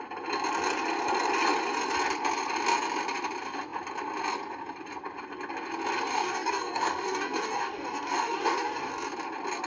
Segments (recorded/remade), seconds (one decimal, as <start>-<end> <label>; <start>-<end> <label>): 0.0-6.1 recorded; 6.1-8.9 remade; 8.9-9.7 recorded